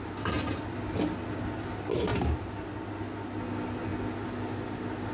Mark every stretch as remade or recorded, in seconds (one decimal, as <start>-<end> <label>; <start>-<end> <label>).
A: 0.0-5.1 recorded

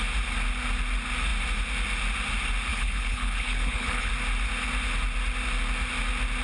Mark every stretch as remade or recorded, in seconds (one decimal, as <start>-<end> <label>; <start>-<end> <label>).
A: 0.0-2.7 recorded; 2.7-4.1 remade; 4.1-6.4 recorded

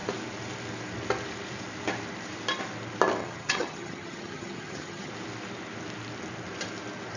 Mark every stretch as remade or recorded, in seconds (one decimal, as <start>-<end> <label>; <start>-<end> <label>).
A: 0.0-3.2 recorded; 3.2-5.1 remade; 5.1-7.2 recorded

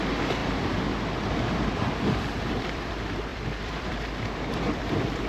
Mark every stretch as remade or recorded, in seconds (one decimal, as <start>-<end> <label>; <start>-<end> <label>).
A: 0.0-0.4 recorded; 0.4-2.9 remade; 2.9-3.3 recorded; 3.3-5.3 remade

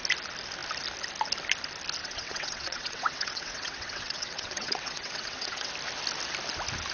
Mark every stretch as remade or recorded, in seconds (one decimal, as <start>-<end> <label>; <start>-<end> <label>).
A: 0.0-2.0 recorded; 2.0-5.7 remade; 5.7-6.9 recorded

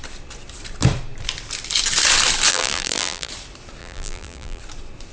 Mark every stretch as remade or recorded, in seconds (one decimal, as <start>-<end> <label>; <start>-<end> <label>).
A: 0.0-2.5 recorded; 2.5-3.3 remade; 3.3-3.8 recorded; 3.8-4.6 remade; 4.6-5.1 recorded

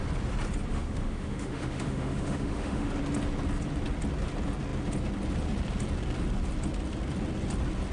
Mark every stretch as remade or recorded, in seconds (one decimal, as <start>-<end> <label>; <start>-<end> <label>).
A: 0.0-0.7 recorded; 0.7-2.9 remade; 2.9-7.9 recorded

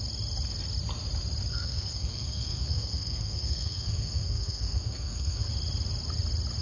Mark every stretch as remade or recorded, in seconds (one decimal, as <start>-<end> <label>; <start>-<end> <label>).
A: 0.0-1.5 recorded; 1.5-5.5 remade; 5.5-6.6 recorded